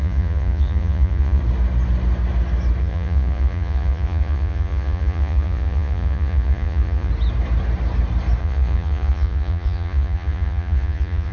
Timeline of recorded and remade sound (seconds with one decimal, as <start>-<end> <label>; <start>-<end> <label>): 0.0-1.4 remade; 1.4-2.8 recorded; 2.8-7.1 remade; 7.1-8.4 recorded; 8.4-11.3 remade